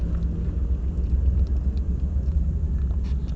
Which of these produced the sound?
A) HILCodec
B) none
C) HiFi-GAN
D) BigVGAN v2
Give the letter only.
B